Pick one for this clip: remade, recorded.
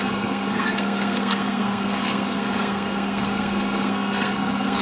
remade